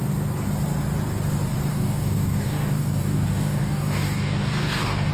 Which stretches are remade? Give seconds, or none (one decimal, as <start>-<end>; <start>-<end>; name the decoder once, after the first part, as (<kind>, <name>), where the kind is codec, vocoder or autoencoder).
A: 1.7-5.1 (codec, DAC)